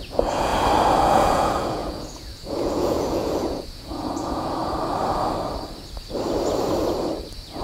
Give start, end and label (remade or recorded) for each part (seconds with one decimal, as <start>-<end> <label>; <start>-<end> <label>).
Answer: 0.0-0.5 remade; 0.5-1.0 recorded; 1.0-4.6 remade; 4.6-7.6 recorded